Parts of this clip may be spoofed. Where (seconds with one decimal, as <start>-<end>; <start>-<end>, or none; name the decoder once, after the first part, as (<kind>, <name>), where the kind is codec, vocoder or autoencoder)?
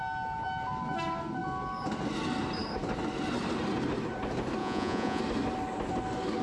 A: 4.6-5.2 (vocoder, Vocos)